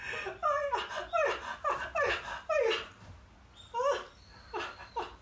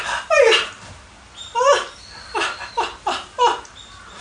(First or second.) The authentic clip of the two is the first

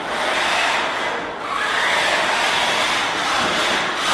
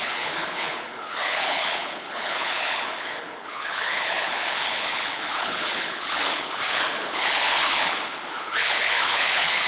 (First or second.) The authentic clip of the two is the first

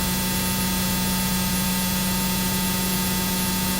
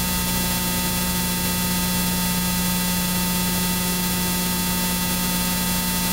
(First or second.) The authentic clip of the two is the second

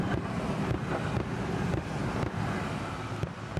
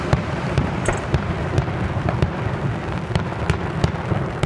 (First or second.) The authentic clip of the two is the first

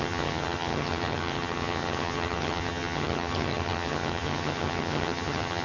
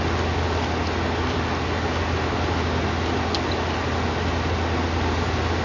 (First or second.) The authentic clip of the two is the second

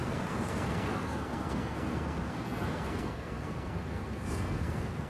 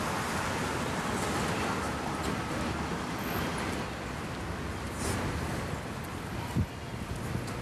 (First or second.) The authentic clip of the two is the second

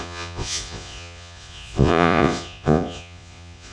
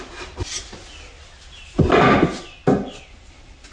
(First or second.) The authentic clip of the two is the second